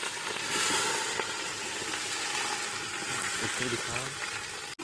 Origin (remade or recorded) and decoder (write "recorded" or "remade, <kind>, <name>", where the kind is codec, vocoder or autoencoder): recorded